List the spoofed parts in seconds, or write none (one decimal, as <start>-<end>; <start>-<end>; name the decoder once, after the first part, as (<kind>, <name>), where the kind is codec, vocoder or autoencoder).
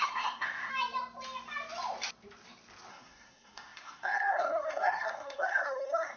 0.0-0.7 (codec, SNAC); 2.9-6.2